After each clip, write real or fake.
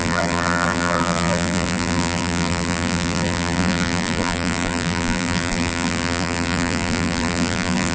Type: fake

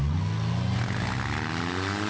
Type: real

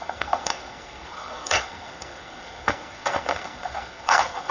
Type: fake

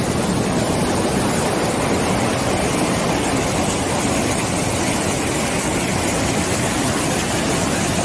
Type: real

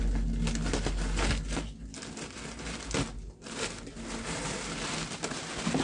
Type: real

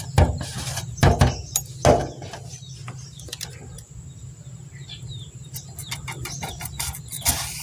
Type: real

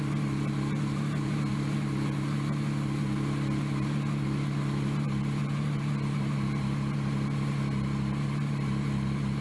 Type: real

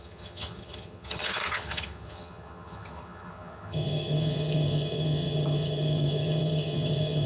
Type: fake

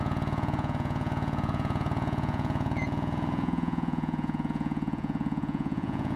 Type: fake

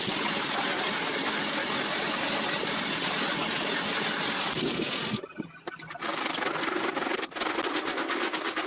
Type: real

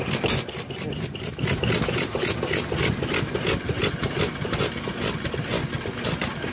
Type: real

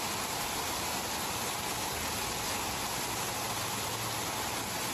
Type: real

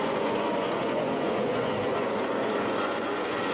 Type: fake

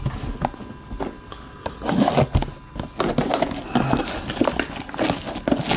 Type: real